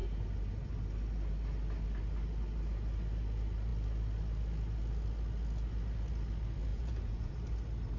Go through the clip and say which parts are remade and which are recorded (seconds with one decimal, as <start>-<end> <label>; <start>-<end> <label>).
0.0-6.7 recorded; 6.7-7.3 remade; 7.3-8.0 recorded